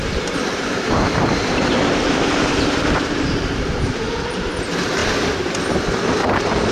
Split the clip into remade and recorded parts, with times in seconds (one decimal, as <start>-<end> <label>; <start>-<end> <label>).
0.0-4.0 remade; 4.0-6.2 recorded; 6.2-6.7 remade